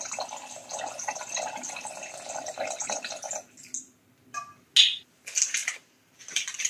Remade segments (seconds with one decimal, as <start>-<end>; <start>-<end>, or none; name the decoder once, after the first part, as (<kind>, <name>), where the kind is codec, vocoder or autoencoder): 5.6-6.7 (vocoder, BigVGAN v2)